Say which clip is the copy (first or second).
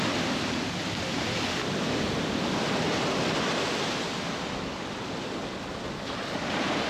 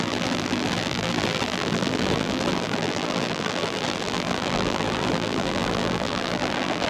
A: second